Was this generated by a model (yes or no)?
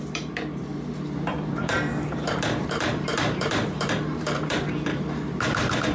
yes